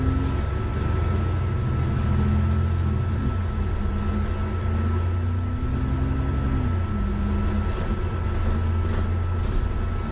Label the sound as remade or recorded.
recorded